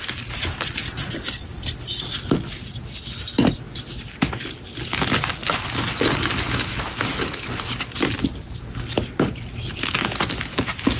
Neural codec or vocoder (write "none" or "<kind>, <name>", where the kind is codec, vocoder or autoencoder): none